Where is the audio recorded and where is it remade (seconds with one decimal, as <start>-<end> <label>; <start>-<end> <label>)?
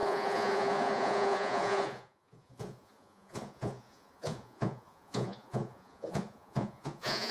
0.0-7.3 remade